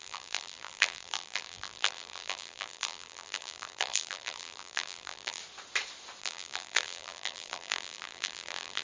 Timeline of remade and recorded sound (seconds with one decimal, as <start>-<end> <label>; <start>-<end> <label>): 0.0-5.4 remade; 5.4-6.2 recorded; 6.2-8.8 remade